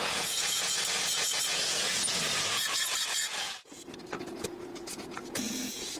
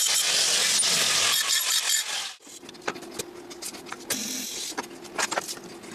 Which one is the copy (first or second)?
first